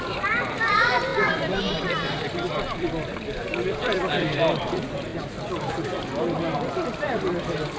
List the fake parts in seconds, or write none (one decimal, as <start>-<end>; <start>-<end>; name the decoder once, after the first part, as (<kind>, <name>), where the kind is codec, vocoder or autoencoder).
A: 0.0-5.1 (vocoder, BigVGAN v2); 6.7-7.8